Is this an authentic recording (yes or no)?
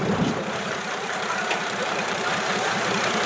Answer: no